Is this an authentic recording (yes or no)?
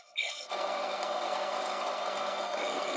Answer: no